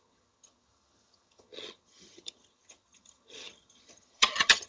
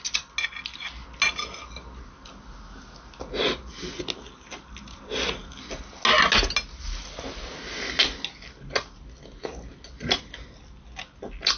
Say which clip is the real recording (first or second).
second